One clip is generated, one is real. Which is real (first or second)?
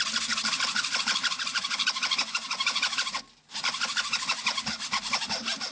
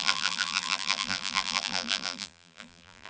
first